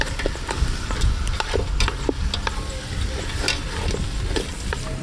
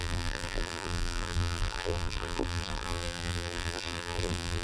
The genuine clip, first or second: first